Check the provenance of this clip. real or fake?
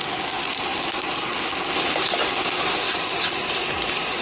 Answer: real